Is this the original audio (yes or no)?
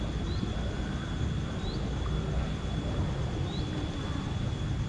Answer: yes